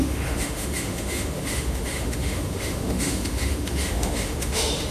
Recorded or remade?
remade